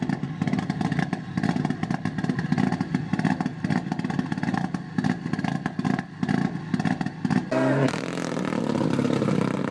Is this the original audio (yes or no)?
yes